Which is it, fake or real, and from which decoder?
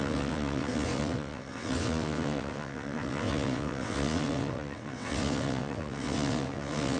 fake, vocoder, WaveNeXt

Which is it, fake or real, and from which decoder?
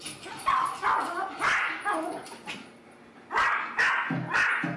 real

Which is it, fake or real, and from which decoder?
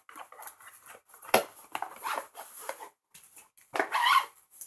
real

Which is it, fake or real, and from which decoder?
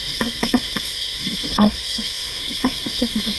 fake, codec, SNAC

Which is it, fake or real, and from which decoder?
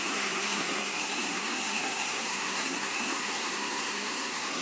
fake, codec, SNAC